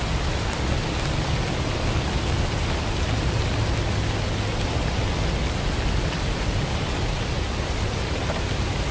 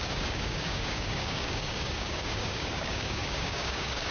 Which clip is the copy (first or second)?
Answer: second